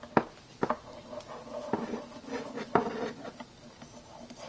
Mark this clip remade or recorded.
recorded